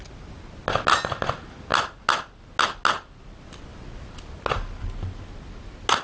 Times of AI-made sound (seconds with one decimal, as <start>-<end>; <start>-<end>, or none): none